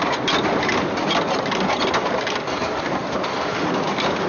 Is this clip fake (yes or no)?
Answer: no